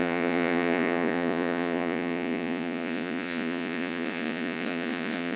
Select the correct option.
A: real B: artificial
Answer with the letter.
B